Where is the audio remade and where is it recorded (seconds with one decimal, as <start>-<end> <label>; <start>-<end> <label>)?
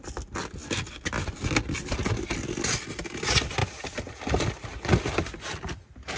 0.0-6.2 recorded